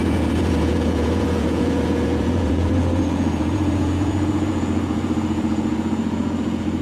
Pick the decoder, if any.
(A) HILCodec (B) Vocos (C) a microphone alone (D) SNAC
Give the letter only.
B